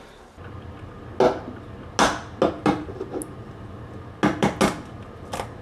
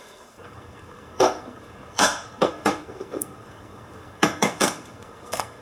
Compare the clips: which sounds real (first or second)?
first